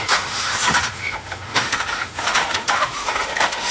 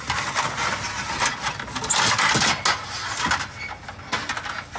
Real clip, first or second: second